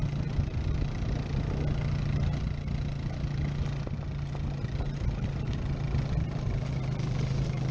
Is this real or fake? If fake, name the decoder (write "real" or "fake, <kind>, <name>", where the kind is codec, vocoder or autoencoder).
real